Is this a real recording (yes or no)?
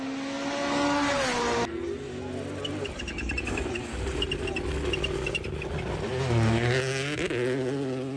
yes